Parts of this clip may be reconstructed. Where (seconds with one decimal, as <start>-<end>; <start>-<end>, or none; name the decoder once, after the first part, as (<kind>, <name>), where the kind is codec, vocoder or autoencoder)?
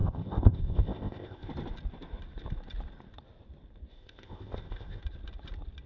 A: 0.0-1.5 (codec, ZipCodec); 3.9-5.0